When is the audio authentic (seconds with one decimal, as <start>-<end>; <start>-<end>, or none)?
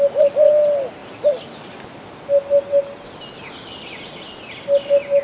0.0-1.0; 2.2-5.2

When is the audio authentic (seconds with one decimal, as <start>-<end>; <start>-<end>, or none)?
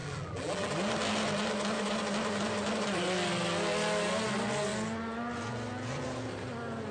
0.7-6.9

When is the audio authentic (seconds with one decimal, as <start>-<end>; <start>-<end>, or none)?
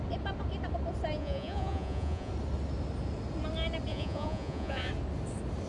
0.0-1.2; 2.3-3.9; 4.9-5.7